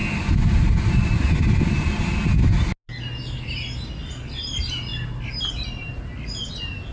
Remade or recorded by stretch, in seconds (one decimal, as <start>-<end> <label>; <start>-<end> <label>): 0.0-6.9 recorded